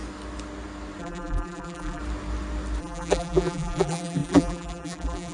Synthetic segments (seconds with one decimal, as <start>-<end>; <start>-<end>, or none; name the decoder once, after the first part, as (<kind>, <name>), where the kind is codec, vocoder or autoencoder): 1.0-2.0 (vocoder, BigVGAN v2); 2.8-5.3